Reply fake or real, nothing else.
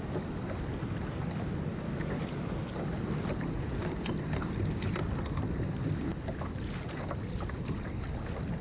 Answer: real